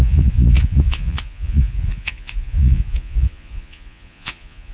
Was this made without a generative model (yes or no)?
no